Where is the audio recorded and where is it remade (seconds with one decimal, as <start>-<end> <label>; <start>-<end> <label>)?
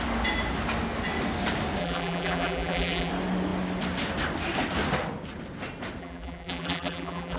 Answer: 0.0-1.8 recorded; 1.8-3.1 remade; 3.1-6.0 recorded; 6.0-7.4 remade